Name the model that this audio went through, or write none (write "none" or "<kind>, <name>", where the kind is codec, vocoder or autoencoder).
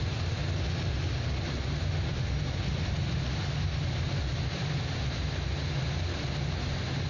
none